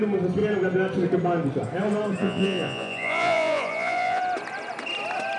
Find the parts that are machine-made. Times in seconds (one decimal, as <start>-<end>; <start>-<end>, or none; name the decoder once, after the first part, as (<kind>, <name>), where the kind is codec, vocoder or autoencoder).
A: 2.2-4.2 (vocoder, Vocos)